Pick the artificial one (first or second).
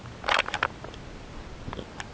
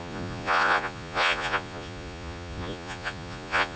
second